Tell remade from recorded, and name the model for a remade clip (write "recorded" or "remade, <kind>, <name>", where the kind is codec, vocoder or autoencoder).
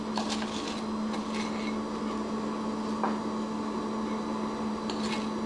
recorded